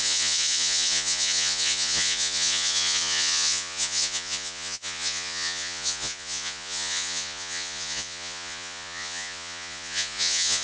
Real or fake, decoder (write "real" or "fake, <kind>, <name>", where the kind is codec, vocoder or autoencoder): fake, vocoder, Vocos